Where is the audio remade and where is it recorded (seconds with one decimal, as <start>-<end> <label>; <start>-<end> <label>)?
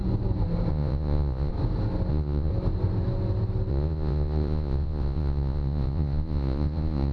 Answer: 0.0-0.7 recorded; 0.7-1.5 remade; 1.5-2.1 recorded; 2.1-2.5 remade; 2.5-3.7 recorded; 3.7-7.1 remade